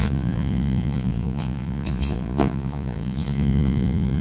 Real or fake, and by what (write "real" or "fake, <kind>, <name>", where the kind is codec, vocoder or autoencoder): fake, vocoder, Vocos